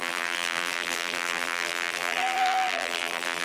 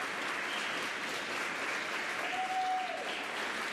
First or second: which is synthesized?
first